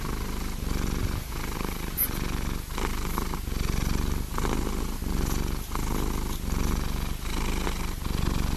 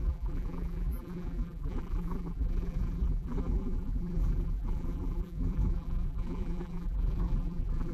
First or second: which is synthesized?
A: second